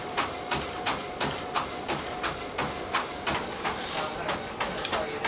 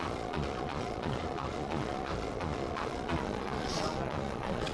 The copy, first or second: second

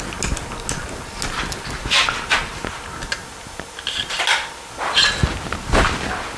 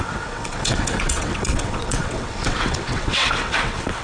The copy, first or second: second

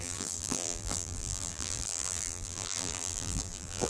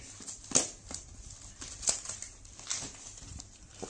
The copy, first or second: first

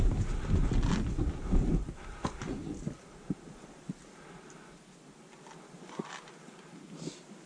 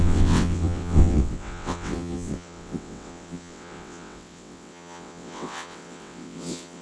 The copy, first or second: second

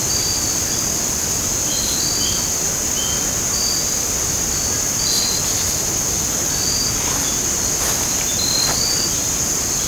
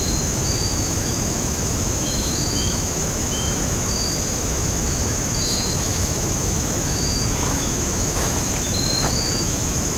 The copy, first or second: second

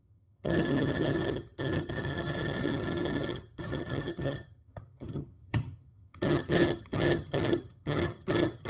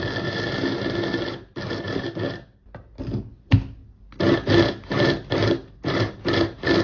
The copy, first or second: first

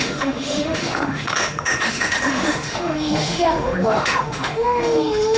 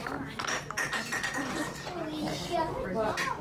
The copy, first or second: first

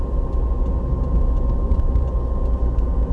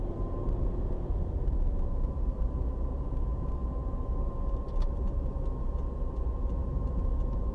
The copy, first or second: second